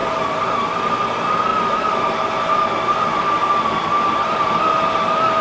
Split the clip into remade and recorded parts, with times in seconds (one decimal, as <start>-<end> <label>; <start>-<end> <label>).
0.0-1.5 remade; 1.5-3.5 recorded; 3.5-5.4 remade